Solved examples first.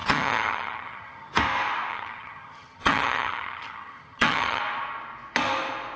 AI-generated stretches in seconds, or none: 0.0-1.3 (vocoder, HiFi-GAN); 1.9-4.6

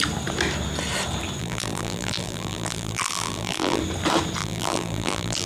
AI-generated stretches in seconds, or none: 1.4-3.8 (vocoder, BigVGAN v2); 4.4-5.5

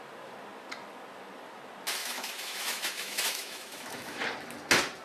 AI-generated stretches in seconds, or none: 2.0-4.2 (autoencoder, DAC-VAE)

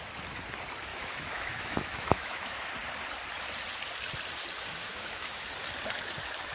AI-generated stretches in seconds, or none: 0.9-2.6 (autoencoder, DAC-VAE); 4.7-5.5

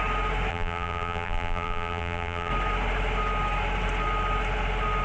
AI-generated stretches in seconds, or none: 0.5-2.5 (vocoder, BigVGAN v2)